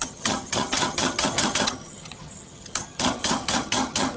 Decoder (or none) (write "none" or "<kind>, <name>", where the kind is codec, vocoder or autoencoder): vocoder, HiFi-GAN